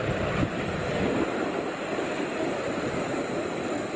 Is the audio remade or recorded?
remade